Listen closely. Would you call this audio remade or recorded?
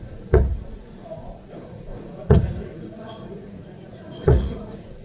remade